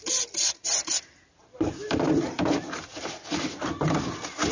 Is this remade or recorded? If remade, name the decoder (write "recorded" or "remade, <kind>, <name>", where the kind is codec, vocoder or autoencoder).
recorded